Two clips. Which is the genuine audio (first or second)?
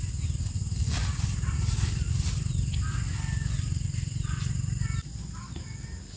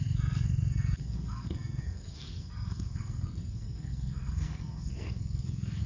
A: first